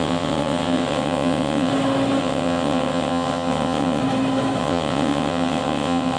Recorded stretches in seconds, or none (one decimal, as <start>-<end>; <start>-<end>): 1.7-2.2; 4.0-4.6